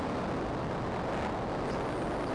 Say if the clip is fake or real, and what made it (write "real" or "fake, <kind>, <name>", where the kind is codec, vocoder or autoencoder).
real